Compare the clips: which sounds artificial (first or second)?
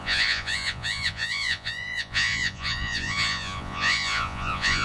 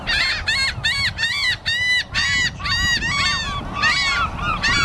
first